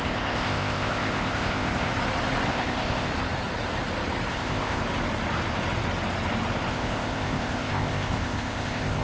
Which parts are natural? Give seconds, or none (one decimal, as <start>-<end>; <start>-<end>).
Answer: 1.9-2.5; 3.1-4.3; 4.8-6.7